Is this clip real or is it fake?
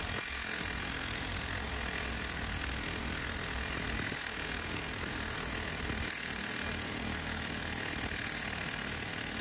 real